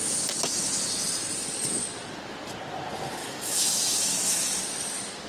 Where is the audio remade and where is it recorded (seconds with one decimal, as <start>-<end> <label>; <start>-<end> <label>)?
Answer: 0.0-3.2 recorded; 3.2-4.6 remade; 4.6-5.3 recorded